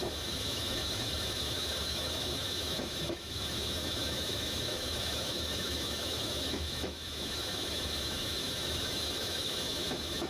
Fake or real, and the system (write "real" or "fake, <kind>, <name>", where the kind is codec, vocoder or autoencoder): fake, autoencoder, DAC-VAE